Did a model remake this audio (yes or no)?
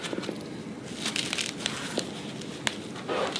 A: no